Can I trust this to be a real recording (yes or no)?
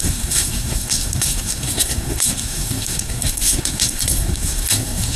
no